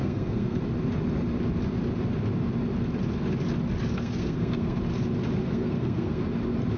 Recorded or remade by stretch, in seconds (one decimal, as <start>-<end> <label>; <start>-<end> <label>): 0.0-0.6 remade; 0.6-4.0 recorded; 4.0-4.8 remade; 4.8-5.4 recorded; 5.4-6.2 remade; 6.2-6.8 recorded

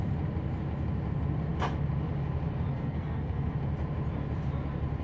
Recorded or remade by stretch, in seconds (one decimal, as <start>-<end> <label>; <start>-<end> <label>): 0.0-2.7 recorded; 2.7-3.5 remade; 3.5-5.0 recorded

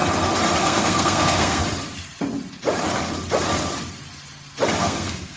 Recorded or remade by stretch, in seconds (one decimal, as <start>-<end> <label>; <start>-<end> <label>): 0.0-0.6 recorded; 0.6-1.6 remade; 1.6-4.8 recorded; 4.8-5.4 remade

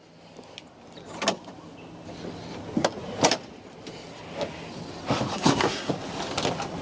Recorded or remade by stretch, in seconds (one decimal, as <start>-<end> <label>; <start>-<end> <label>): 0.0-5.3 recorded; 5.3-5.9 remade; 5.9-6.8 recorded

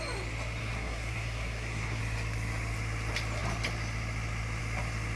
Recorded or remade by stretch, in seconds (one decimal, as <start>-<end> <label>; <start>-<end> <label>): 0.0-0.6 recorded; 0.6-2.0 remade; 2.0-5.2 recorded

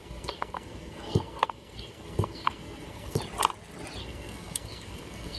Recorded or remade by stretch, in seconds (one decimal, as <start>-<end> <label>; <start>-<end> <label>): 0.0-3.2 remade; 3.2-4.0 recorded; 4.0-5.4 remade